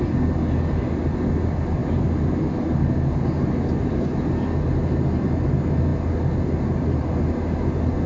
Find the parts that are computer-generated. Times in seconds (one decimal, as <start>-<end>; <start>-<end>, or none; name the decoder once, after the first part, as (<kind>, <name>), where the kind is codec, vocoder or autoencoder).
1.8-3.9 (vocoder, BigVGAN v2)